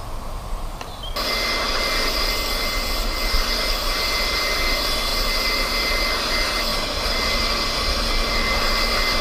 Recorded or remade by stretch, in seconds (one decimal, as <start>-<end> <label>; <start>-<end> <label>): 0.0-5.1 recorded; 5.1-6.0 remade; 6.0-6.7 recorded; 6.7-7.4 remade; 7.4-9.2 recorded